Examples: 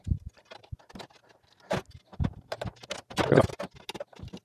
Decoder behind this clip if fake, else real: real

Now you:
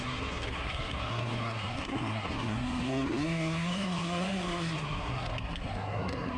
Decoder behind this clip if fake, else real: fake, codec, SNAC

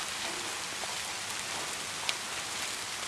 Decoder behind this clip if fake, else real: real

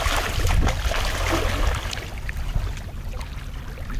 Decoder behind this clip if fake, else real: real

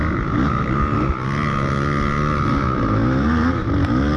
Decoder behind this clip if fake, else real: real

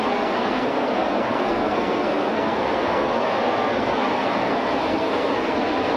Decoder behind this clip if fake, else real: fake, codec, SNAC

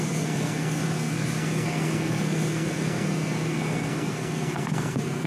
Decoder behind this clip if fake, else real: fake, codec, SNAC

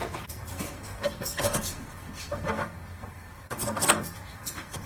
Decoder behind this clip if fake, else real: fake, codec, SNAC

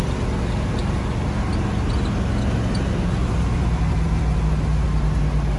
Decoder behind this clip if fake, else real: real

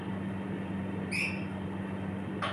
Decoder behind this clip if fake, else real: real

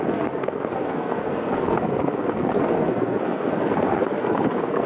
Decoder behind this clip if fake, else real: fake, codec, SNAC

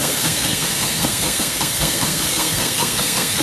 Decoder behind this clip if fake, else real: fake, codec, SNAC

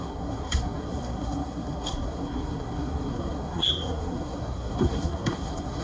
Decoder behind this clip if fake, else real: fake, codec, SNAC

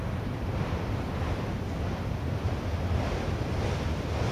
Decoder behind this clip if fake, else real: real